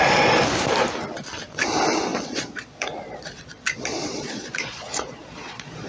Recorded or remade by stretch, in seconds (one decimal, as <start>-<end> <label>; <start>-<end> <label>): 0.0-2.1 recorded; 2.1-5.9 remade